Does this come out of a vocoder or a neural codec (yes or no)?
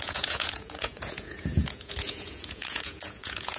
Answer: yes